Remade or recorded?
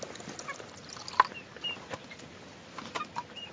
recorded